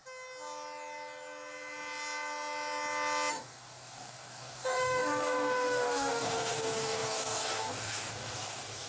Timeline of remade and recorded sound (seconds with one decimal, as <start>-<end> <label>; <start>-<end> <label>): 0.0-3.3 recorded; 3.3-8.9 remade